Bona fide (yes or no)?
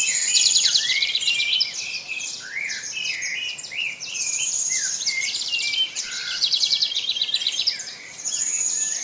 no